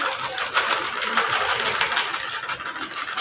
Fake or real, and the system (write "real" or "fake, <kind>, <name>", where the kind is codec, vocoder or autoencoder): real